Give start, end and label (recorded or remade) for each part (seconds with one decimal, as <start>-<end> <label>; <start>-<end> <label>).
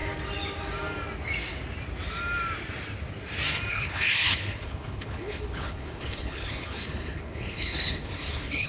0.0-3.7 recorded; 3.7-8.7 remade